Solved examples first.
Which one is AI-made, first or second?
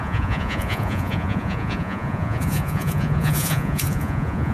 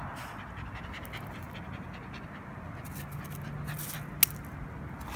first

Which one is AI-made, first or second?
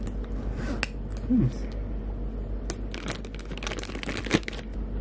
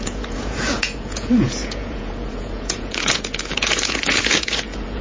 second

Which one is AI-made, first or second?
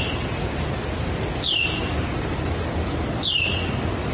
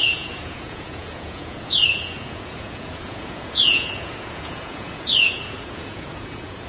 second